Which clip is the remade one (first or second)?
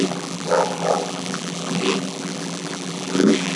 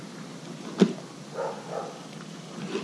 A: first